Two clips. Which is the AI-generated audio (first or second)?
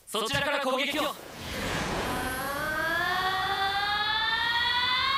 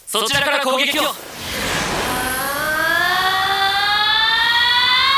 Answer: first